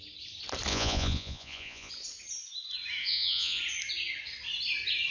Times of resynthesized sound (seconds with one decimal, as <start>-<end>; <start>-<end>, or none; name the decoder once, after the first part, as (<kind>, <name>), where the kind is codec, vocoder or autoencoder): 0.7-1.9 (vocoder, Vocos); 3.0-3.6